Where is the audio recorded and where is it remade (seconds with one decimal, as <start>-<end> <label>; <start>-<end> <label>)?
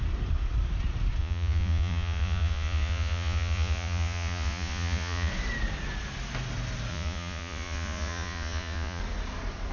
0.0-1.2 recorded; 1.2-5.3 remade; 5.3-6.9 recorded; 6.9-9.0 remade; 9.0-9.7 recorded